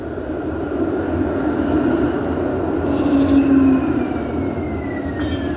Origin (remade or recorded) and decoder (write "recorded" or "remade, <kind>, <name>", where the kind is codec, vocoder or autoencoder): recorded